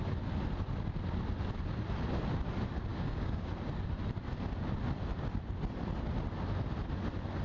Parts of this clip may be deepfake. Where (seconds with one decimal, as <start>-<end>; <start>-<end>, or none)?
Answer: 2.9-3.5

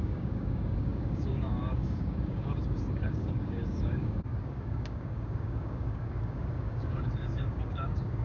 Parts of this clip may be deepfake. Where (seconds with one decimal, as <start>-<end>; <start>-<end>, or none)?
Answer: 0.0-8.2

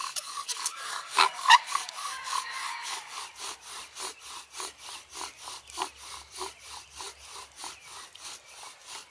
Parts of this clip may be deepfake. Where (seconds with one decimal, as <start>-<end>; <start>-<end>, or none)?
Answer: 0.0-3.2

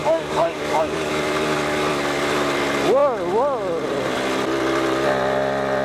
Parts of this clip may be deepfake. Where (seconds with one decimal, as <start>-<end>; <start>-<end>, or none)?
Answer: 0.0-1.1

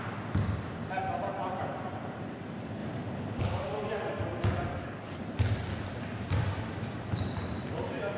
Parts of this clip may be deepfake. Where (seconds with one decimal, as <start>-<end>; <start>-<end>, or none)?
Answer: 4.7-5.2